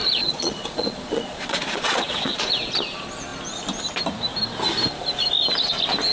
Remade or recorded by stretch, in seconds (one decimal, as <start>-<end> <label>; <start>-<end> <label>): 0.0-2.7 remade; 2.7-6.1 recorded